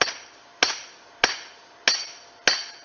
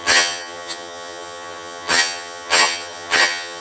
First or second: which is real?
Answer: first